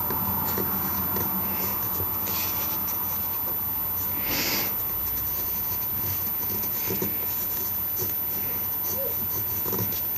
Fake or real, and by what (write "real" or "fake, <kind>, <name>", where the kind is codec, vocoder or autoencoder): real